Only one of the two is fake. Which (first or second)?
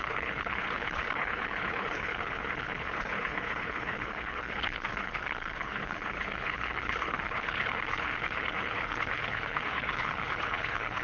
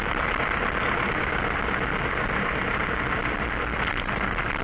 first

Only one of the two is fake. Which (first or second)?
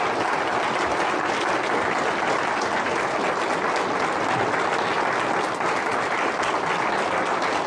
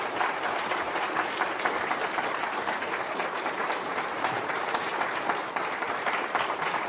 second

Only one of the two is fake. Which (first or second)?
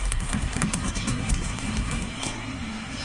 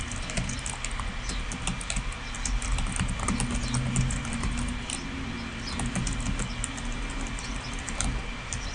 first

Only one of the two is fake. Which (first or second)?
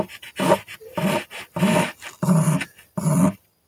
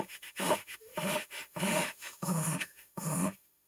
second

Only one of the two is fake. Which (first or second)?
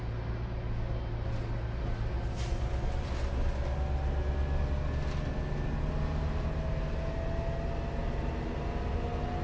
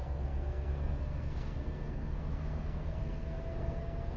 second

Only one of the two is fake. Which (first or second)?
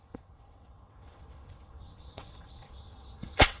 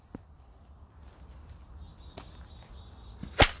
first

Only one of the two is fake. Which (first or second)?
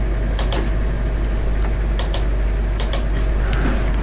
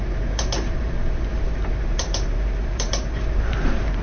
second